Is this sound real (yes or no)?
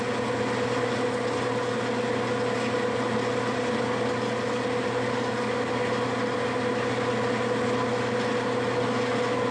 yes